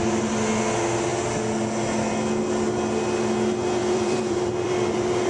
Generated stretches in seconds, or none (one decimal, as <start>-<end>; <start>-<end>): 3.8-5.3